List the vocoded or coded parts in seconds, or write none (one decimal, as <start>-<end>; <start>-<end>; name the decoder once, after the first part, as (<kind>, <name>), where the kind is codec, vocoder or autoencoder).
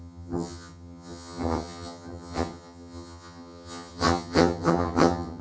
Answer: 0.0-5.4 (vocoder, HiFi-GAN)